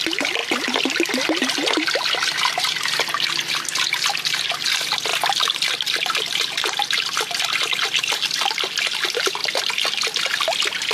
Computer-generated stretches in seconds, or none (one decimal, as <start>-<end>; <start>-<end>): none